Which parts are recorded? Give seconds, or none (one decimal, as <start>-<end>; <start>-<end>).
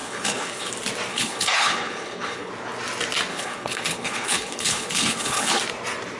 0.7-1.1; 2.5-3.3; 5.6-6.2